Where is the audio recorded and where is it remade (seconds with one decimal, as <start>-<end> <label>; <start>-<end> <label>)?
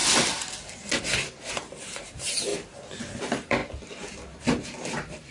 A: 0.0-1.5 recorded; 1.5-2.5 remade; 2.5-3.0 recorded; 3.0-3.6 remade; 3.6-4.4 recorded; 4.4-5.3 remade